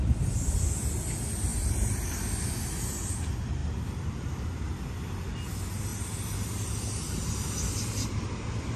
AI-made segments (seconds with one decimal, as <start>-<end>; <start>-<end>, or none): none